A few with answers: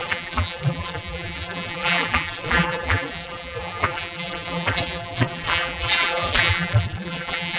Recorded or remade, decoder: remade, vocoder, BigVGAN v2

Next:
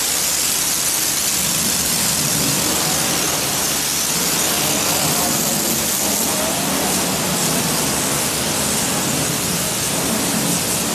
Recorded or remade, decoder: recorded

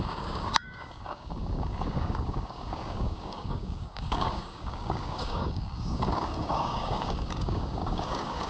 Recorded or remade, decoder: remade, codec, DAC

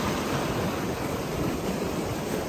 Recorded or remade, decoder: recorded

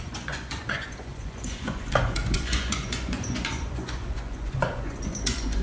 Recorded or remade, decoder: remade, vocoder, Vocos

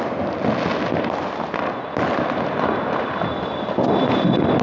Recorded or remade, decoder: recorded